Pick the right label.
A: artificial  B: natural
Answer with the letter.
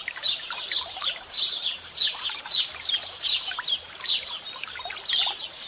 A